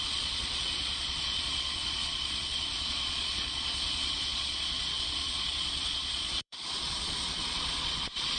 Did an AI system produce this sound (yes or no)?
yes